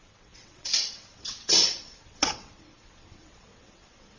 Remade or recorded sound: remade